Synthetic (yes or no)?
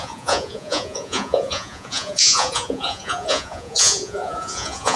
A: yes